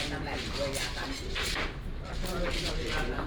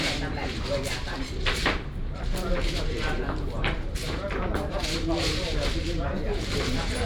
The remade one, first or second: second